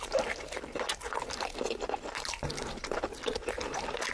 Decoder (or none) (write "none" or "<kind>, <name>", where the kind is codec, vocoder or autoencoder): none